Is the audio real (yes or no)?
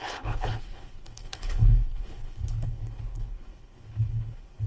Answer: no